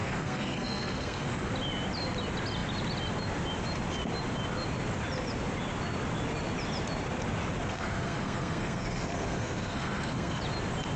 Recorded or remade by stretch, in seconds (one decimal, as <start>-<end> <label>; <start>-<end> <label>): 0.0-1.5 remade; 1.5-7.7 recorded; 7.7-10.4 remade; 10.4-11.0 recorded